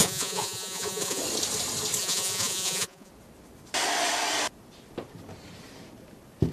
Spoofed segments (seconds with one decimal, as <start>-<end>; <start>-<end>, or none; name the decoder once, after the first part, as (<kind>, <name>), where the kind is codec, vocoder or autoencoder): 0.0-1.2 (vocoder, Vocos); 2.0-3.1